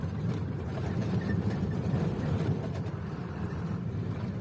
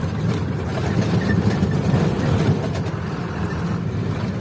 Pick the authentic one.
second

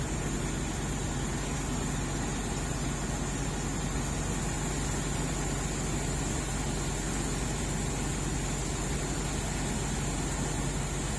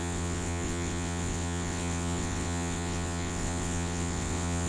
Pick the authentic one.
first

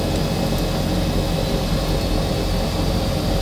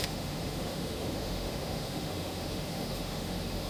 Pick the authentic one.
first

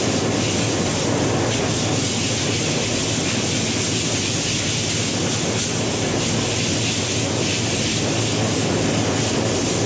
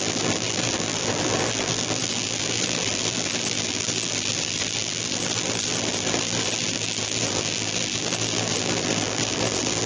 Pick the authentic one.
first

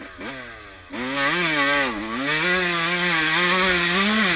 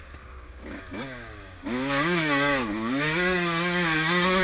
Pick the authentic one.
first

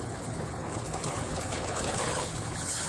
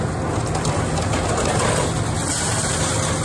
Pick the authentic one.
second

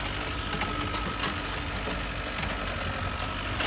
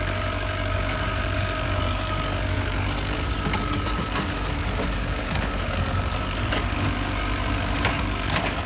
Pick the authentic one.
first